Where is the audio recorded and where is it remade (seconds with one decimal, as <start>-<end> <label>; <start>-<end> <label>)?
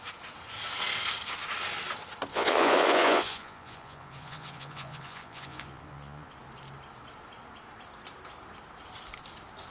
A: 0.0-2.3 recorded; 2.3-6.3 remade; 6.3-9.7 recorded